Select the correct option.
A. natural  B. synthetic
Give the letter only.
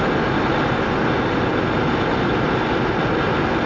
A